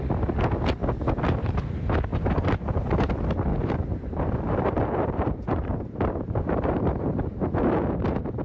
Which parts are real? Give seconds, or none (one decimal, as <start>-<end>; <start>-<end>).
0.0-2.1; 3.1-3.5